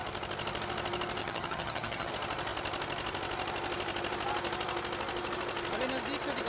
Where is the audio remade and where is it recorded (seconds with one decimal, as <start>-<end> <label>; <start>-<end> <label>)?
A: 0.0-1.2 recorded; 1.2-2.1 remade; 2.1-6.5 recorded